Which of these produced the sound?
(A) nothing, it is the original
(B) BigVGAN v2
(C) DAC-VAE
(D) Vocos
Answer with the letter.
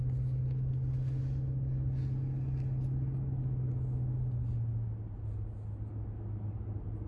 A